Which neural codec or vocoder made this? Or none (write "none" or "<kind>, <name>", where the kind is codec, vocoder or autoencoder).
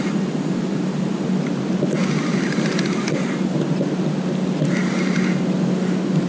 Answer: none